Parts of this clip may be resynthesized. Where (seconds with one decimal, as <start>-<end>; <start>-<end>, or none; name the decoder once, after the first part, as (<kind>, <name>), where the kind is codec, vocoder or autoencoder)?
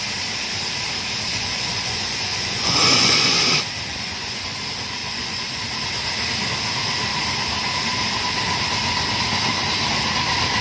1.3-3.4 (vocoder, Vocos); 3.9-4.6; 5.0-5.6